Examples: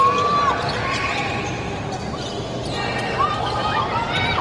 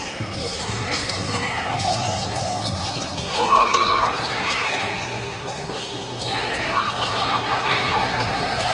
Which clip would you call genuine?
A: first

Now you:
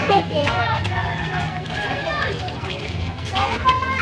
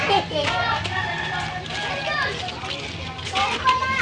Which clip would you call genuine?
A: second